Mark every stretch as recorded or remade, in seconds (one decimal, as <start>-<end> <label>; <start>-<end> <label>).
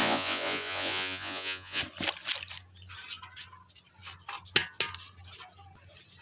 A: 0.0-1.8 remade; 1.8-6.2 recorded